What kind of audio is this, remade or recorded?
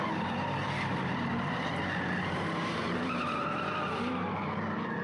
remade